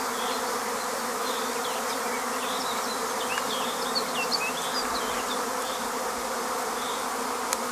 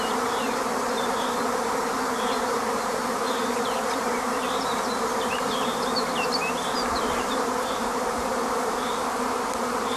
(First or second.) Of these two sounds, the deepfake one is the second